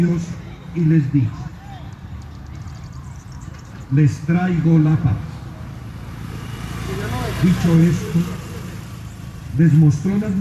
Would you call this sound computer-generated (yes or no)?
yes